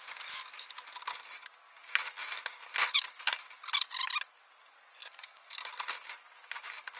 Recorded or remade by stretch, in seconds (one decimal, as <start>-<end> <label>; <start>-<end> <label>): 0.0-7.0 recorded